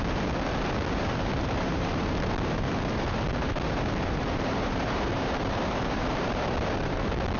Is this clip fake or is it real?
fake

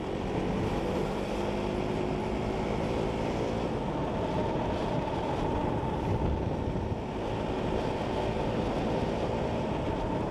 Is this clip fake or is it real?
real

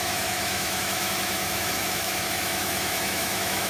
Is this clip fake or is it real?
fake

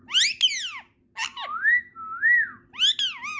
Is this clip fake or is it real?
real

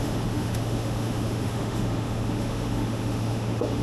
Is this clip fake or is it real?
fake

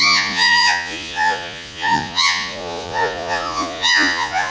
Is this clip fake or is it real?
fake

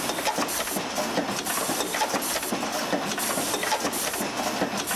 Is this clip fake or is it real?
real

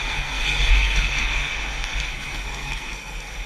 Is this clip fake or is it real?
fake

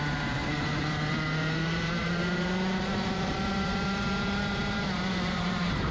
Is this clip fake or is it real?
fake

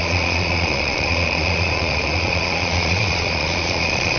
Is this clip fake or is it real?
fake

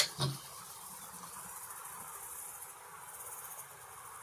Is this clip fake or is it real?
real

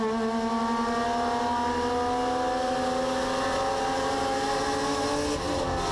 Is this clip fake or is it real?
real